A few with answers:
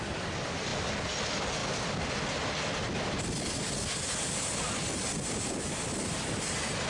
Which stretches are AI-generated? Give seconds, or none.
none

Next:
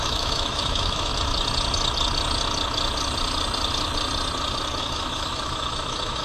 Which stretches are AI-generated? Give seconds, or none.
0.0-1.1; 4.8-6.2

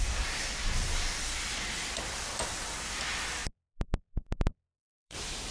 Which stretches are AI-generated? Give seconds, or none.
0.0-3.4; 4.8-5.5

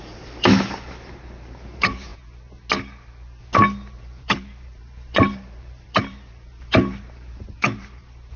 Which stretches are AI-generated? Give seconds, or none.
0.0-2.1; 4.0-8.4

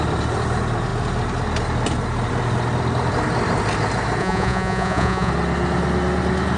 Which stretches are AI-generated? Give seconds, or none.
4.2-5.3

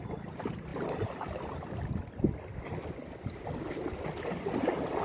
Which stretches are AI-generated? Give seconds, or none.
none

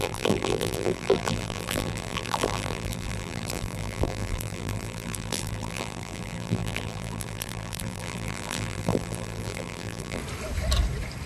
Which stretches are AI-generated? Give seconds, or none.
0.0-10.2

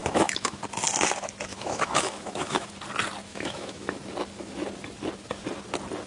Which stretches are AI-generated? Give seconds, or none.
0.0-0.6; 1.5-2.7; 3.3-3.9